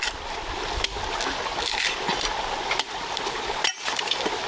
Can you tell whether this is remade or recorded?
recorded